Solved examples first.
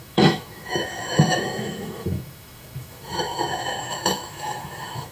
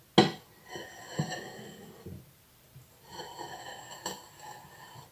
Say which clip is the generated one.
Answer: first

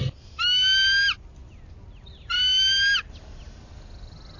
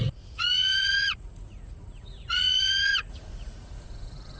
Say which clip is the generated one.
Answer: second